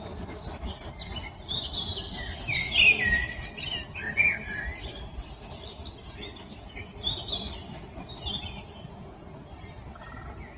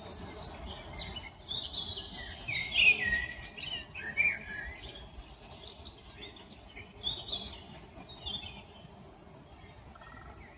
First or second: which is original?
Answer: first